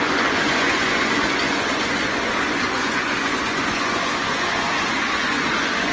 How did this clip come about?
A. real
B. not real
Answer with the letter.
B